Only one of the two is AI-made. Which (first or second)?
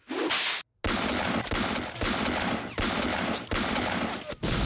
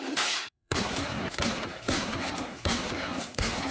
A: second